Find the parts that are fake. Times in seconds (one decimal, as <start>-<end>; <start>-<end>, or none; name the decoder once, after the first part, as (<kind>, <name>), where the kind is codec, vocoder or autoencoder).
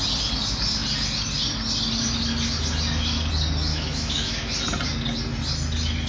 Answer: 3.7-4.5 (autoencoder, DAC-VAE)